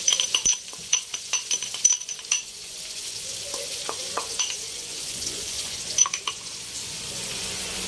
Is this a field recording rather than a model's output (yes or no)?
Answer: no